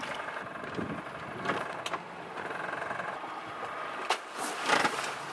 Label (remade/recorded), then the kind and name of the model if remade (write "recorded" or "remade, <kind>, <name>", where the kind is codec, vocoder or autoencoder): recorded